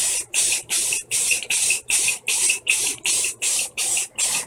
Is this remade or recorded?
remade